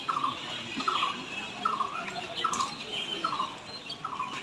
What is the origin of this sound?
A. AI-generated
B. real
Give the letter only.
A